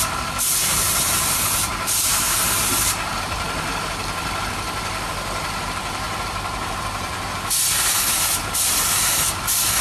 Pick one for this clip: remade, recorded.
remade